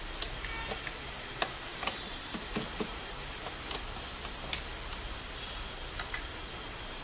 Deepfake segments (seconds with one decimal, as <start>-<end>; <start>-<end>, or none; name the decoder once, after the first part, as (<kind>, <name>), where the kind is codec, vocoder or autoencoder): 1.7-3.1 (vocoder, BigVGAN v2)